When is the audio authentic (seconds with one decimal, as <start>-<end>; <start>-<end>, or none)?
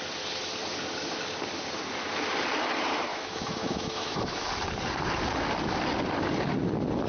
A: 0.0-3.1; 4.5-7.1